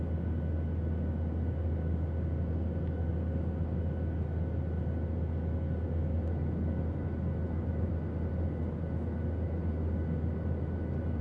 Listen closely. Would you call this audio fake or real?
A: real